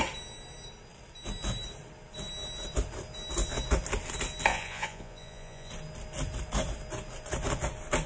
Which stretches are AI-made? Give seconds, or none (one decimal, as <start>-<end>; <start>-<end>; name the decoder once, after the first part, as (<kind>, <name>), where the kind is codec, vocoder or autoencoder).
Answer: 4.5-5.7 (vocoder, Vocos)